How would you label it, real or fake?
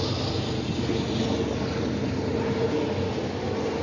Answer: real